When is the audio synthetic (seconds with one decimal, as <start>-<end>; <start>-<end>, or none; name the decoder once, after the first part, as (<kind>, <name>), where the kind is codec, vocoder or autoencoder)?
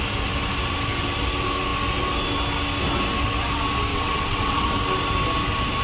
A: 3.9-4.7 (vocoder, WaveNeXt)